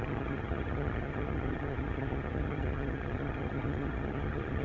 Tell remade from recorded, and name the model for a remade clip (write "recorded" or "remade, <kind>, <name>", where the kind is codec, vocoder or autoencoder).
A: remade, vocoder, HiFi-GAN